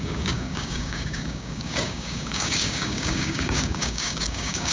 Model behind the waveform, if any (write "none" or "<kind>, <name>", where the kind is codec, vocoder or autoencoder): codec, DAC